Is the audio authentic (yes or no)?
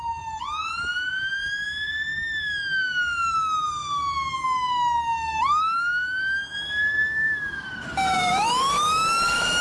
no